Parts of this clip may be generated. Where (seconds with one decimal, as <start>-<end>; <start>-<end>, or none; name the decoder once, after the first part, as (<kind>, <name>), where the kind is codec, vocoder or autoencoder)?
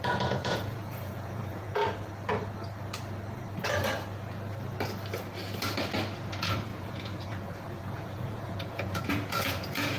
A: 0.0-1.8 (vocoder, Vocos); 6.3-10.0